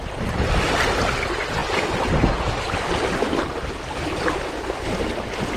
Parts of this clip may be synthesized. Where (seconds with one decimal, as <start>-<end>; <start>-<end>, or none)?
none